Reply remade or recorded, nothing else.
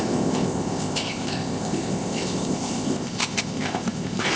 remade